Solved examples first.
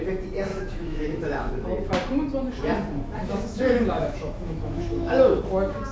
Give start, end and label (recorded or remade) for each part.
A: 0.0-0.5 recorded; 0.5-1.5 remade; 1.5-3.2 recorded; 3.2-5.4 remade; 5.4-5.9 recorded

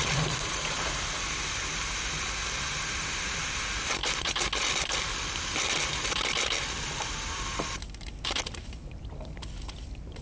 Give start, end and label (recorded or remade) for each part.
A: 0.0-10.2 recorded

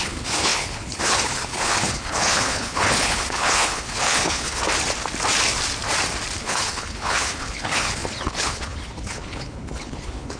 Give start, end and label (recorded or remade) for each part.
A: 0.0-4.6 remade; 4.6-6.4 recorded; 6.4-10.4 remade

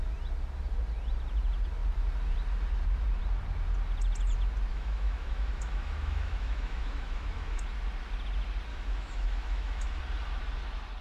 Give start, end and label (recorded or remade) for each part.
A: 0.0-4.7 recorded; 4.7-7.6 remade; 7.6-8.7 recorded; 8.7-10.0 remade; 10.0-11.0 recorded

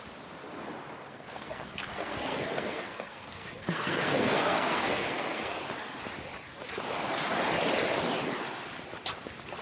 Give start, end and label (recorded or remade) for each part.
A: 0.0-1.0 recorded; 1.0-5.6 remade; 5.6-9.6 recorded

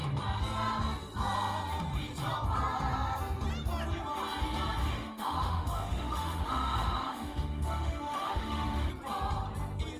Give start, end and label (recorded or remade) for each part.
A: 0.0-4.8 recorded; 4.8-8.9 remade; 8.9-10.0 recorded

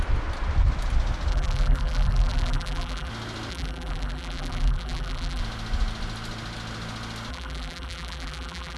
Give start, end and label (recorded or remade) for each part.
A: 0.0-1.3 recorded; 1.3-3.1 remade; 3.1-3.5 recorded; 3.5-5.4 remade; 5.4-7.3 recorded; 7.3-8.8 remade